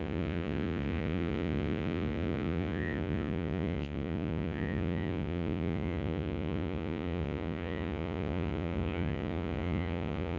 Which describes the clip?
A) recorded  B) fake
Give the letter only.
B